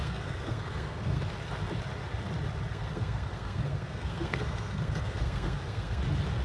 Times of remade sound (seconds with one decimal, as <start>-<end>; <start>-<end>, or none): 0.0-1.2; 2.7-6.0